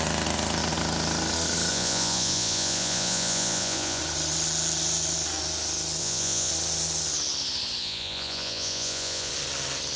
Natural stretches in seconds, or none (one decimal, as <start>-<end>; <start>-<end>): 0.0-1.7; 4.0-6.0; 6.5-7.8; 9.3-10.0